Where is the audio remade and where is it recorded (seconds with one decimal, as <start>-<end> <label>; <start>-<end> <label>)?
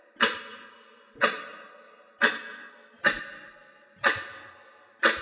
0.0-5.2 recorded